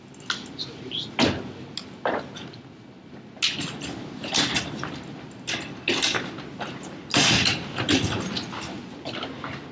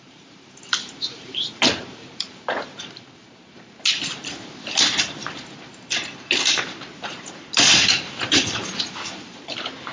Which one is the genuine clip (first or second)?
first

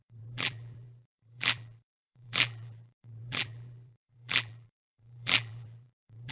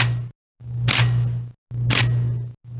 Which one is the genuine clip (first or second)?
second